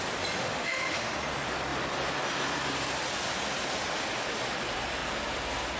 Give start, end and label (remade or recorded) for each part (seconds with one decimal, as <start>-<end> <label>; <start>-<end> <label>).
0.0-0.4 recorded; 0.4-1.2 remade; 1.2-5.8 recorded